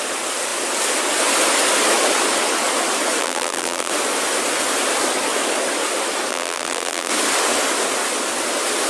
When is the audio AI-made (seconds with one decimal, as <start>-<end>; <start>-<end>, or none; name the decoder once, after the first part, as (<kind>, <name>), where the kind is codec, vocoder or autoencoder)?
3.2-3.9 (vocoder, BigVGAN v2); 6.3-7.1